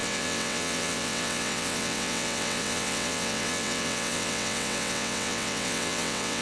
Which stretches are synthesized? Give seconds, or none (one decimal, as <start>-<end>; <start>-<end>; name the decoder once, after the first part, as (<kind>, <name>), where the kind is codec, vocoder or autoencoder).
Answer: 0.0-6.4 (vocoder, WaveNeXt)